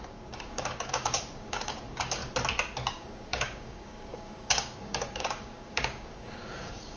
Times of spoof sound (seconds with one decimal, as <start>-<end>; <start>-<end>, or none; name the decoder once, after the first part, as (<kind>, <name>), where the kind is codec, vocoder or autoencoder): 0.0-2.2 (codec, DAC); 2.9-7.0